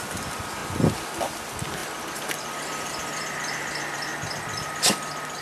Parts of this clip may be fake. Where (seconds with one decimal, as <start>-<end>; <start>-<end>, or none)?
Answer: 0.0-0.6; 1.2-1.8; 2.4-4.1